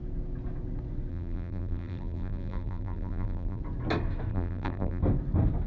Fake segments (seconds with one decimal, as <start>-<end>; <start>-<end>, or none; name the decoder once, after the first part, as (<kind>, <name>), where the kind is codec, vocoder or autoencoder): 1.1-3.6 (vocoder, BigVGAN v2); 4.3-5.0

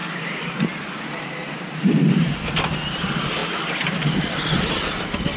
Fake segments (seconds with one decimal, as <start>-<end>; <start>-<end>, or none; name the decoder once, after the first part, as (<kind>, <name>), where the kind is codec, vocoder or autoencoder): 0.0-0.8 (vocoder, BigVGAN v2); 1.4-2.5; 3.4-4.7